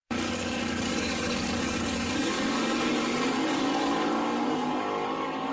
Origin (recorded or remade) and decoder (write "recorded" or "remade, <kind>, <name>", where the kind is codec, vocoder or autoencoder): remade, codec, DAC